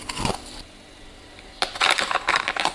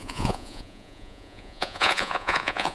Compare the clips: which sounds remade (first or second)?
second